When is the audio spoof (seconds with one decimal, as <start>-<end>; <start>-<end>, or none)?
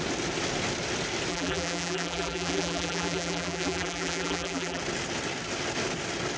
1.3-4.8